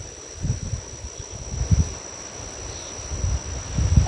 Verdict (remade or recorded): recorded